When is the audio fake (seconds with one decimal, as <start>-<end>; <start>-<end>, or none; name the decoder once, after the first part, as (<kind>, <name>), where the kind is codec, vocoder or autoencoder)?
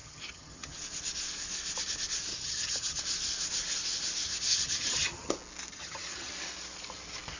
0.0-0.8 (vocoder, HiFi-GAN); 2.3-3.0; 4.5-5.3; 5.7-6.3